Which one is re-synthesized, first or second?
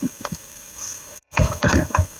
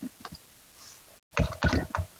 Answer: first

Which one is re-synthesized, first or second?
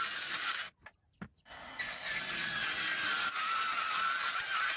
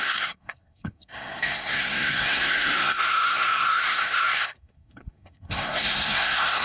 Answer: second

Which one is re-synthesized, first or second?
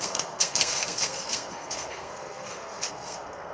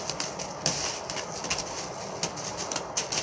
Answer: first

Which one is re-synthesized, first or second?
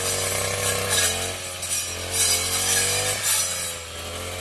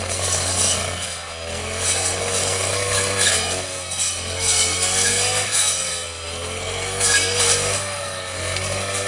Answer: second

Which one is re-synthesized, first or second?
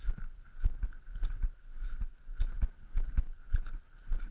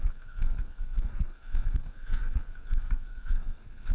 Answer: second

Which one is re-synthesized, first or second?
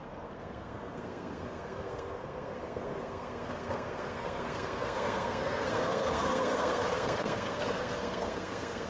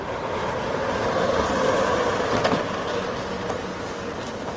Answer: first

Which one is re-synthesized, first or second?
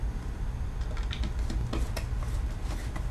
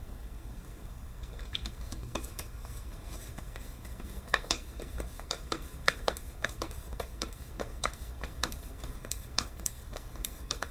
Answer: second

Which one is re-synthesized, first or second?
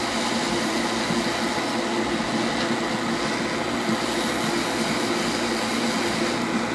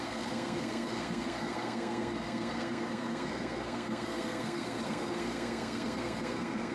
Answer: second